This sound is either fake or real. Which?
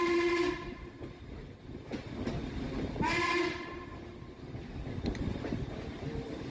real